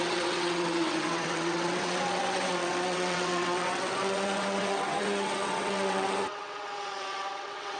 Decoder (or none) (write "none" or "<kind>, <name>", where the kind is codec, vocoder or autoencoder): vocoder, WaveNeXt